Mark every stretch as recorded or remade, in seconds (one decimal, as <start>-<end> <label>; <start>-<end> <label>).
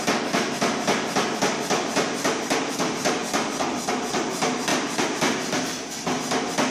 0.0-4.7 recorded; 4.7-5.2 remade; 5.2-6.7 recorded